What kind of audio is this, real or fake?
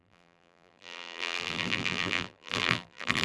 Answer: fake